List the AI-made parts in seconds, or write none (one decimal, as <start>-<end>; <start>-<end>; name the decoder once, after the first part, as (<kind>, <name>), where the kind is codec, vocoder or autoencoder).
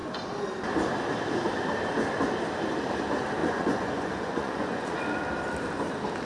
3.4-5.0 (vocoder, Vocos)